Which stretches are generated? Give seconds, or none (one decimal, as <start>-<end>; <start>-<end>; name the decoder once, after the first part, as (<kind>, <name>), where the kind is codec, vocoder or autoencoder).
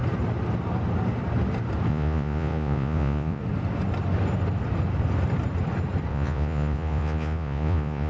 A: 1.9-3.4 (vocoder, Vocos); 6.1-8.1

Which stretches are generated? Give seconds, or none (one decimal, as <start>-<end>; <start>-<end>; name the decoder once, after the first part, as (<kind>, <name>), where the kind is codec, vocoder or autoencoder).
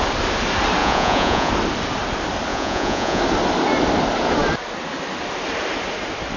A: 0.8-1.5 (vocoder, Vocos); 2.5-3.2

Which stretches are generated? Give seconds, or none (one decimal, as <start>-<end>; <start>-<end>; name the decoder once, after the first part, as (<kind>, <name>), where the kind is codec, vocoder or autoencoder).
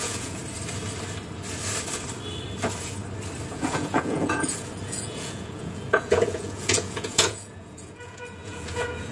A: 0.0-0.4 (vocoder, Vocos); 3.5-9.1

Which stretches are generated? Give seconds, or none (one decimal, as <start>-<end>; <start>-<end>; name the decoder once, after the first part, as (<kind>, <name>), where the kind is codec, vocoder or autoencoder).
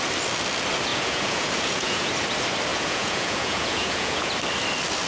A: 0.9-2.1 (vocoder, Vocos); 2.7-4.3